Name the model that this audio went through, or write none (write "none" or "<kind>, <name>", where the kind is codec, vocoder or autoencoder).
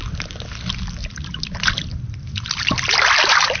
none